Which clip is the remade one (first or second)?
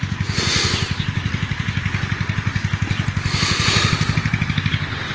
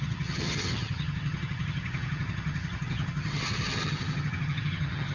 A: second